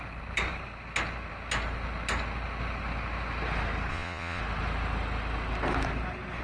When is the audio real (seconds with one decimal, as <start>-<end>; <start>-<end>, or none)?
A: 0.0-3.9; 4.4-6.4